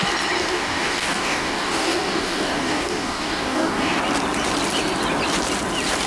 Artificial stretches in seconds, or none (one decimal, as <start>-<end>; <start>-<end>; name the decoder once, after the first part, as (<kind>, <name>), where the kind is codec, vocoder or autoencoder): 0.4-4.0 (codec, DAC)